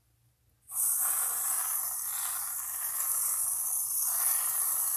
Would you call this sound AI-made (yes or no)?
no